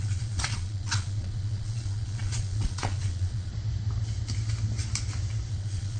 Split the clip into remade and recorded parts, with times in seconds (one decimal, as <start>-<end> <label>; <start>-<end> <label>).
0.0-3.5 remade; 3.5-5.5 recorded; 5.5-6.0 remade